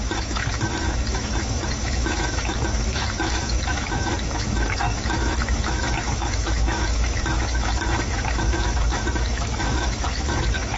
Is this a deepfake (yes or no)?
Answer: yes